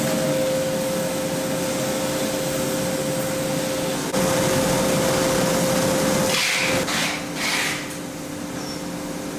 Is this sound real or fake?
real